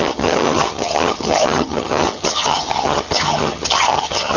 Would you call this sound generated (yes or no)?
yes